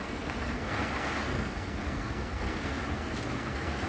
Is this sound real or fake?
fake